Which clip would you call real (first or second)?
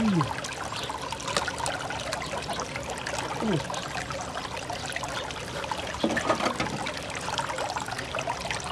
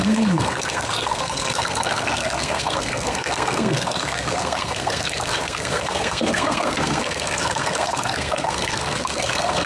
first